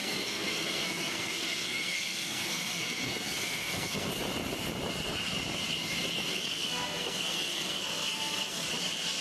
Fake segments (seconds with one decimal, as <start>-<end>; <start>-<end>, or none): 0.0-4.1; 6.3-8.7